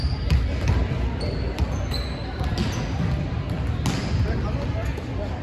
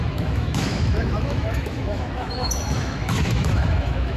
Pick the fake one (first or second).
second